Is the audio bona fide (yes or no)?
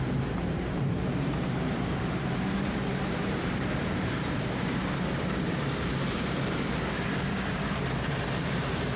no